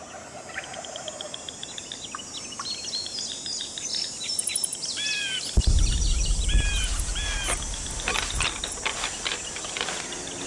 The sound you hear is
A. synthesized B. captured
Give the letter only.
B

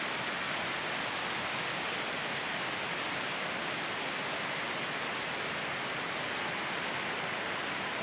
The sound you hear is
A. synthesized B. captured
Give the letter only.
B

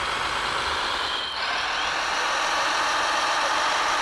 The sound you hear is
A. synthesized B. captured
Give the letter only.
B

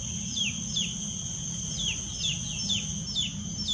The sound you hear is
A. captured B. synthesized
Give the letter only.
A